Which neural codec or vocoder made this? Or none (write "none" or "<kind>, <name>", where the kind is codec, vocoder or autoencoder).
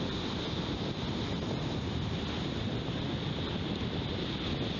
none